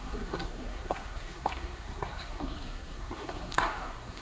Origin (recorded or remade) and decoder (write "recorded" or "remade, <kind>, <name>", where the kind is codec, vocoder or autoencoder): remade, codec, SNAC